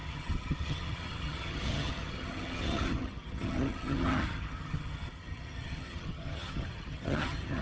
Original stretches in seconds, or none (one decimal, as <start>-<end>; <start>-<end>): none